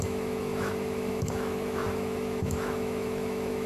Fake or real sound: fake